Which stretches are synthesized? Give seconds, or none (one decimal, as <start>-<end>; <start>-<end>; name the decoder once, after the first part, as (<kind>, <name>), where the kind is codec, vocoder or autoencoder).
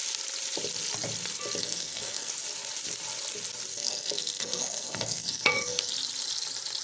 1.6-2.3 (codec, SNAC); 3.7-5.9